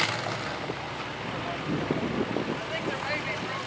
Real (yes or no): yes